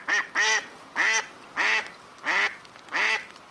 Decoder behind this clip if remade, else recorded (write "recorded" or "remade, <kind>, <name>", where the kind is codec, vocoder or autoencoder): recorded